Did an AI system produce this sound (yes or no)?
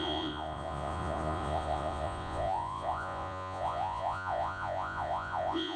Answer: yes